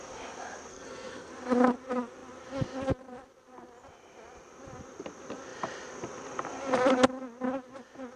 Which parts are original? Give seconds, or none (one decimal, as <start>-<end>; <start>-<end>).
0.0-0.7; 1.3-8.2